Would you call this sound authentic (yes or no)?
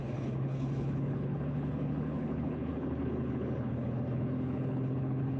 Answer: no